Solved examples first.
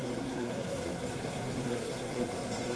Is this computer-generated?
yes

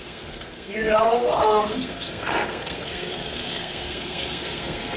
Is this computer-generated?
yes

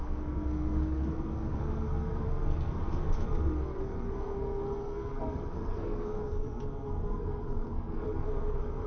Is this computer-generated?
yes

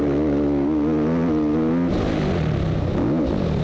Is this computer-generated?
no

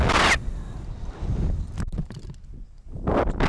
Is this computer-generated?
no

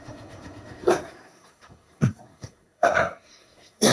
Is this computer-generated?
yes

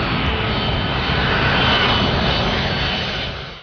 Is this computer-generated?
no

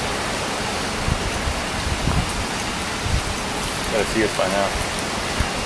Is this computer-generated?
no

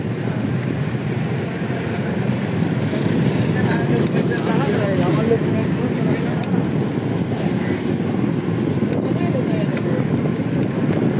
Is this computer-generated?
no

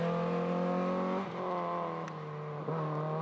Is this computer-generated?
no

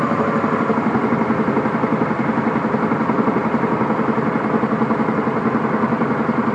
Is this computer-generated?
no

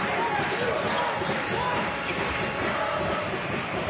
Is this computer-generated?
no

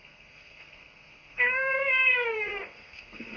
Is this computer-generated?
yes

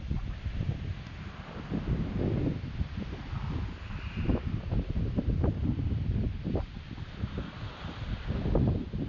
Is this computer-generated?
no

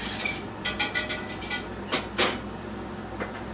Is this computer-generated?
no